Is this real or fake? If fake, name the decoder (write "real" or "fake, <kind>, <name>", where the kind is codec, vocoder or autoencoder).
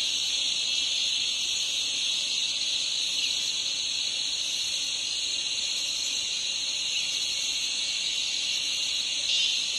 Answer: real